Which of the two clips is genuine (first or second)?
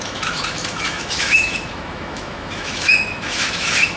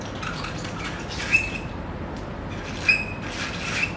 second